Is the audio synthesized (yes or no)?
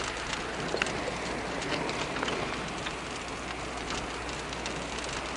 no